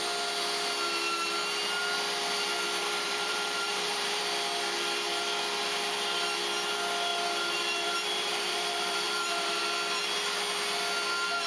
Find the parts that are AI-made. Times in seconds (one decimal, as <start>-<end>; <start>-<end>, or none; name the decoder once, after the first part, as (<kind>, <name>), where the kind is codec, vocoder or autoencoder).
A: 2.8-4.2 (vocoder, BigVGAN v2); 7.1-9.6

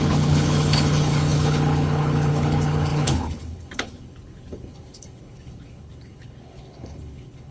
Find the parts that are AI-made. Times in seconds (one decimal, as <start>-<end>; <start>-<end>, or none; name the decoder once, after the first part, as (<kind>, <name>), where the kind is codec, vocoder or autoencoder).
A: 0.0-7.5 (codec, HILCodec)

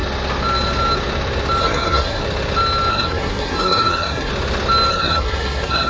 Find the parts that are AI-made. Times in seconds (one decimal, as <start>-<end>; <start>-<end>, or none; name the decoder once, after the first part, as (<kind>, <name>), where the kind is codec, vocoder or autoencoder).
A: 1.6-2.2 (codec, SNAC); 2.9-4.3; 4.9-5.9

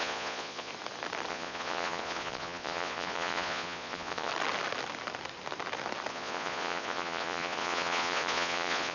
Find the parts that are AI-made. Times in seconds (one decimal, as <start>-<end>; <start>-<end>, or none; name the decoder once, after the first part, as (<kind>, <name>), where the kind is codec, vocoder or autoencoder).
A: 0.0-0.7 (vocoder, Vocos); 1.3-4.3; 6.1-8.9

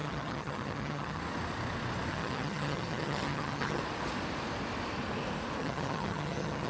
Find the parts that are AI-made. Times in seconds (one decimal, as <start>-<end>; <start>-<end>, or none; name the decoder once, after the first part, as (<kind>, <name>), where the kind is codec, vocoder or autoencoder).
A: 0.0-1.2 (vocoder, HiFi-GAN); 2.1-3.8; 5.6-6.7

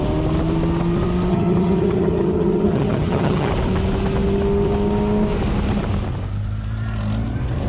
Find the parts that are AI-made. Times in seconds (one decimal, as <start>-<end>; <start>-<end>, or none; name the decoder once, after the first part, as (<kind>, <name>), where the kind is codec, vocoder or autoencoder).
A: 1.3-3.5 (vocoder, HiFi-GAN)

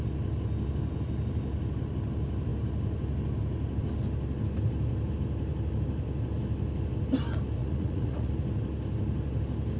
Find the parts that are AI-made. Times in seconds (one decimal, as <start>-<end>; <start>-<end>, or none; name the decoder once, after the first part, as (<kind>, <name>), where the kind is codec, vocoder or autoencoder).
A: 7.6-8.3 (vocoder, Vocos)